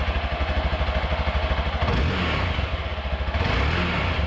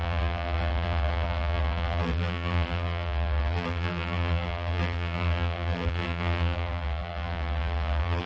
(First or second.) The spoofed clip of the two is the second